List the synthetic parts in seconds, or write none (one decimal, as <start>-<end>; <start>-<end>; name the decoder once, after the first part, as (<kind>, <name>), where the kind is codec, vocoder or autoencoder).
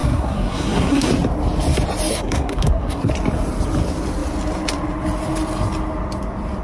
0.0-1.1 (codec, SNAC); 2.1-3.1